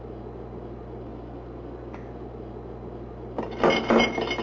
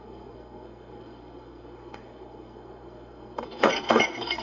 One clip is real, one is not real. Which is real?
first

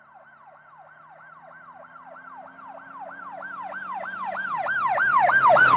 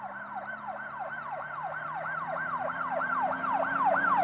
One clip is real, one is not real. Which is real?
first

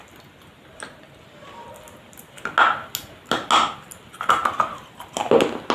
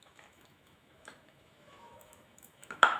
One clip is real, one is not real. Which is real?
first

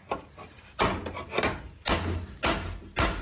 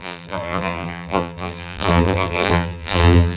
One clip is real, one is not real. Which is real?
first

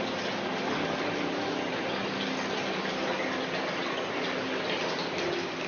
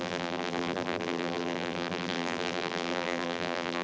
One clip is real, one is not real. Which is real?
first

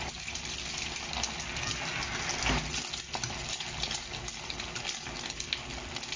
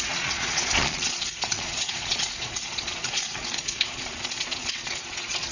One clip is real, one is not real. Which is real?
first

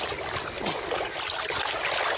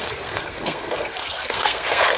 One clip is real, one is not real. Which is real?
first